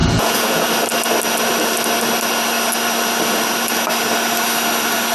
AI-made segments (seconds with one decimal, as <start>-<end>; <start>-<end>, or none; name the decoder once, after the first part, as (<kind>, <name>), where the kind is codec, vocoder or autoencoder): 0.0-0.7 (vocoder, Vocos)